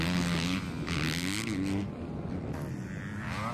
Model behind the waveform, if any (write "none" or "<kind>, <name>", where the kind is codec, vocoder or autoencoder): none